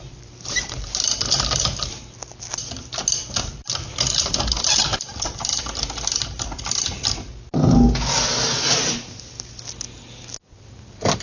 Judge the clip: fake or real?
real